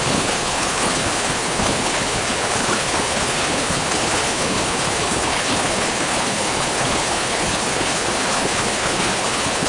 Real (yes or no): no